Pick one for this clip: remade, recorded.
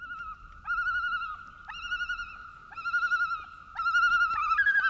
recorded